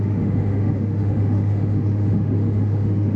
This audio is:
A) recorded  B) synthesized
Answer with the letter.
B